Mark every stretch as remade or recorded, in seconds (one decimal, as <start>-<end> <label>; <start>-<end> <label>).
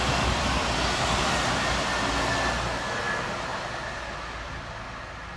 0.0-5.4 recorded